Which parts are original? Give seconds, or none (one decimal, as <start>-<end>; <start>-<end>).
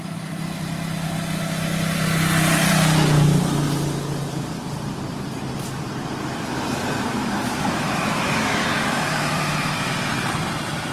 0.0-7.2; 9.9-10.9